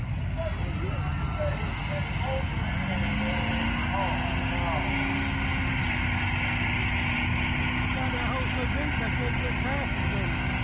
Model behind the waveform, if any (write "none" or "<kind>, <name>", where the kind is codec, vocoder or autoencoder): none